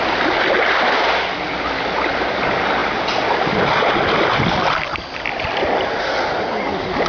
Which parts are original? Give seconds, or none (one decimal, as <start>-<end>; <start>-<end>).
0.0-7.1